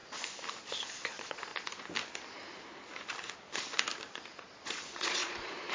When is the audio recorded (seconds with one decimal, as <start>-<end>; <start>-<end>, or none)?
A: 0.0-0.6; 1.5-4.4